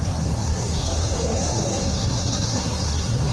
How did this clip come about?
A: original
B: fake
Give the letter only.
B